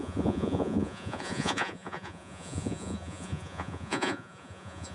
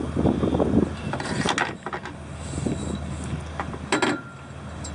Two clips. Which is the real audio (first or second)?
second